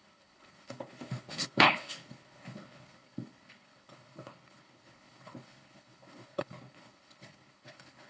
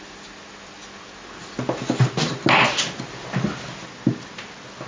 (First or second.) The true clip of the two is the second